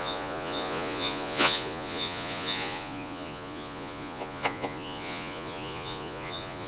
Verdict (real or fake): fake